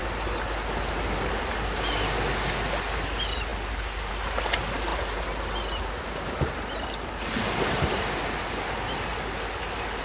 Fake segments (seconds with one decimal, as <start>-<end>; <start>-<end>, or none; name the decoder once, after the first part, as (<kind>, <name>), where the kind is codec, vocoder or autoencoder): none